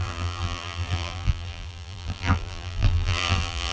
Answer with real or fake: fake